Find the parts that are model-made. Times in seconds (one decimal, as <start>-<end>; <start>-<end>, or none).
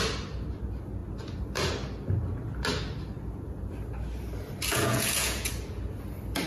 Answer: 4.7-5.5